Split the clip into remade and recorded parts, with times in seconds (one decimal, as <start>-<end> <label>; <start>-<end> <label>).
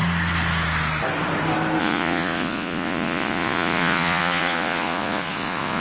0.0-1.8 recorded; 1.8-5.8 remade